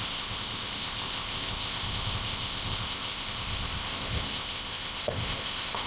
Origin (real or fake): fake